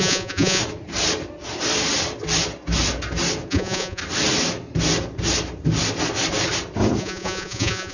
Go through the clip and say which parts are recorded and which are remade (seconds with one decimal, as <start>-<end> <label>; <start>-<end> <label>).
0.0-0.6 remade; 0.6-3.5 recorded; 3.5-4.0 remade; 4.0-7.0 recorded; 7.0-7.9 remade